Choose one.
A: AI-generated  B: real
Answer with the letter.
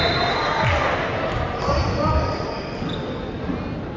B